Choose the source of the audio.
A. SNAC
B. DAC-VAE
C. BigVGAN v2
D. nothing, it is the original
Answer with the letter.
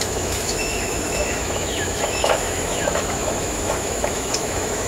B